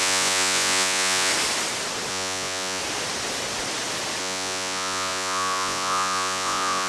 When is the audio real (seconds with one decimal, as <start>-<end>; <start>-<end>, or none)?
1.3-2.1; 2.8-4.2